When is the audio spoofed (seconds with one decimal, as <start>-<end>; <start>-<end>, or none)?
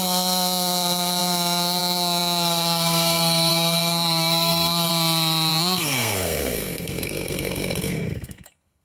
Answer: 0.0-4.9; 5.5-8.8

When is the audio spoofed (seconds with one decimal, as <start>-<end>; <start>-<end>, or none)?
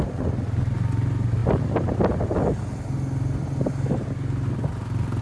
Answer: none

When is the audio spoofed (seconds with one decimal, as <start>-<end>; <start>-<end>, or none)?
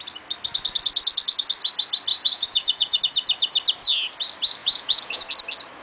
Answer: 2.1-3.0; 4.6-5.3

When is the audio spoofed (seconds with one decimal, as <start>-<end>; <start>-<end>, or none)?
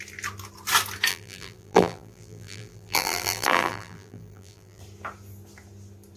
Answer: 1.1-4.8